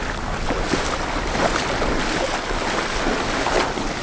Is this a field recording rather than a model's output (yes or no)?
yes